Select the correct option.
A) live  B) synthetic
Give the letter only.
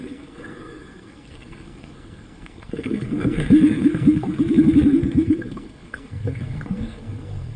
B